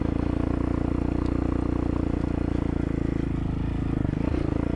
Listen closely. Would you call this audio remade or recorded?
recorded